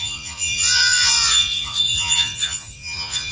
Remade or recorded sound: remade